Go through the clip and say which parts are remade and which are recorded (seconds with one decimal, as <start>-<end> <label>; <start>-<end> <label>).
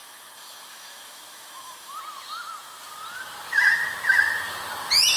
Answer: 0.0-2.0 remade; 2.0-5.2 recorded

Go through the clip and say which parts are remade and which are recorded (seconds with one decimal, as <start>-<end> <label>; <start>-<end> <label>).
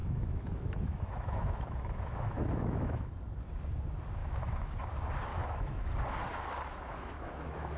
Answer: 0.0-3.1 remade; 3.1-4.2 recorded; 4.2-4.8 remade; 4.8-5.3 recorded; 5.3-5.9 remade; 5.9-6.7 recorded; 6.7-7.8 remade